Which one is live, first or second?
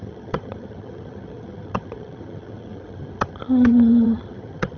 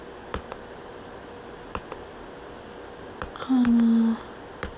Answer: second